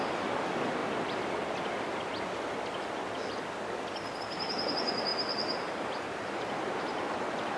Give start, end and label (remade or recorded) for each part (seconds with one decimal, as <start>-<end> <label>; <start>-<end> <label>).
0.0-5.1 recorded; 5.1-7.0 remade; 7.0-7.6 recorded